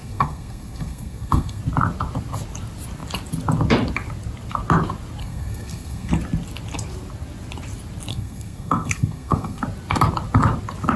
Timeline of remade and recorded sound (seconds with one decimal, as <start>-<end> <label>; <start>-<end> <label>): 0.0-1.6 remade; 1.6-5.2 recorded; 5.2-6.1 remade; 6.1-8.1 recorded; 8.1-9.6 remade; 9.6-11.0 recorded